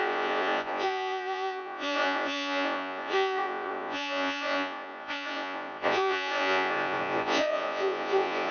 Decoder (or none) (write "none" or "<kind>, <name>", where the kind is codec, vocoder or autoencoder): vocoder, Vocos